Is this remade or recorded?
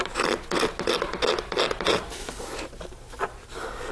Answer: recorded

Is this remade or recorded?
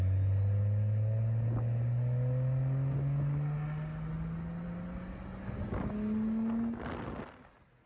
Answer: recorded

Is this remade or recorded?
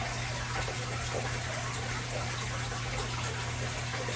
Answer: recorded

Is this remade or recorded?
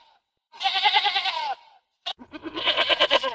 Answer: remade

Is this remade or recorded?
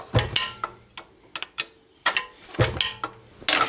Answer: recorded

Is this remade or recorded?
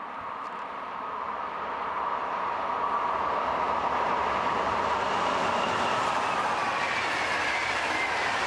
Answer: recorded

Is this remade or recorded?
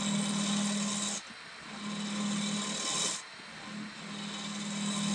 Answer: recorded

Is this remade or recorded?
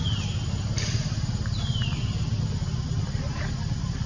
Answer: recorded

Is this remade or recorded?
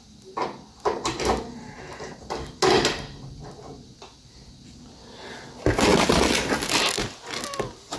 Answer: recorded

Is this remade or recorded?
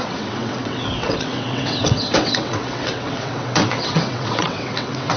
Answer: remade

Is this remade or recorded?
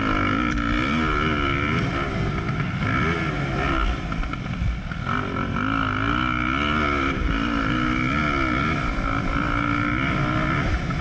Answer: recorded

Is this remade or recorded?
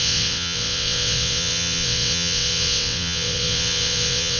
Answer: remade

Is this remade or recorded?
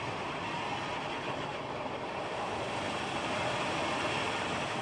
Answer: recorded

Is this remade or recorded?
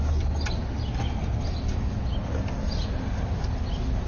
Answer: recorded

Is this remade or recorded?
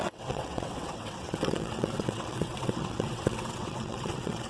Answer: remade